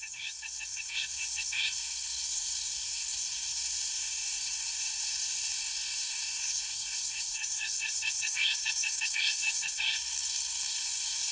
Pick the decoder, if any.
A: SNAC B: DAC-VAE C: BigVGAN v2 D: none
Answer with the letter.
A